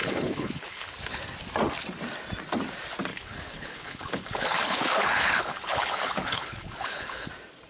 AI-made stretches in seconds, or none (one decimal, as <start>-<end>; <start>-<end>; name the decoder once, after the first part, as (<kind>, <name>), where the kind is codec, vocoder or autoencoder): 0.0-1.2 (codec, HILCodec); 3.1-7.3